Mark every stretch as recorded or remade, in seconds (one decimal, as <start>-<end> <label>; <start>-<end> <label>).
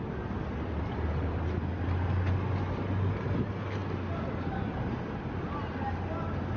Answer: 0.0-6.6 recorded